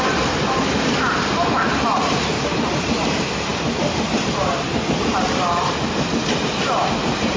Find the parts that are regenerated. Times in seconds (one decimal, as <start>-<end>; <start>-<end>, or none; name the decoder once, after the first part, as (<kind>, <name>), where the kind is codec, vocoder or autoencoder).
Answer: none